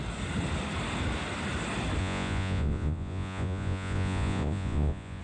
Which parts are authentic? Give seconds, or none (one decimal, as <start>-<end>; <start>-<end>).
0.0-2.0